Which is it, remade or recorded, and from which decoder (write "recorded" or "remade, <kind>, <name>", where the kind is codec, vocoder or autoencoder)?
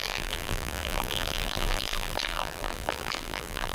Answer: remade, vocoder, BigVGAN v2